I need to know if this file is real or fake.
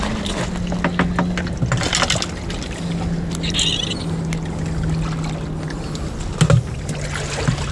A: real